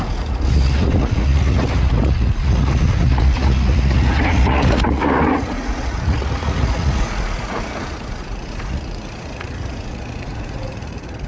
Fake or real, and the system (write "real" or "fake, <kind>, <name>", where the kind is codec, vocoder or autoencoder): fake, vocoder, Vocos